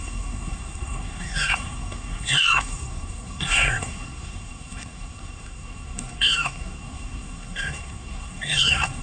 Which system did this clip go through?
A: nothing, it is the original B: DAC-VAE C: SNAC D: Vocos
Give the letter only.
C